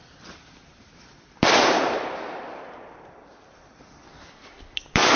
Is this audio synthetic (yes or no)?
yes